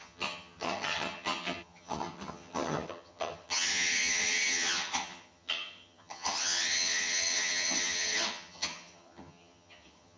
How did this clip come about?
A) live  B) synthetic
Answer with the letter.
B